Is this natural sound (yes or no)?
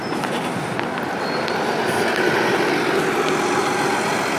yes